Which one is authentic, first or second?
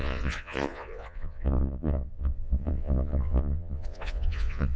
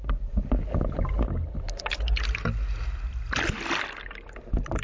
second